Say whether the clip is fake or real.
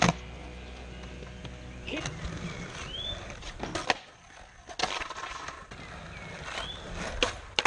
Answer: real